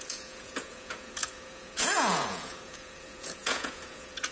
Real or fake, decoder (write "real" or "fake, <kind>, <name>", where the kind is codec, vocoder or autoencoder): fake, vocoder, Vocos